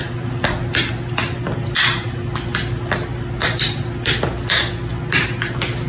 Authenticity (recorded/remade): recorded